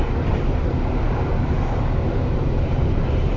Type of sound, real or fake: real